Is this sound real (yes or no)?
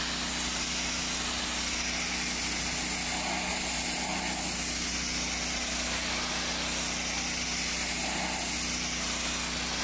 yes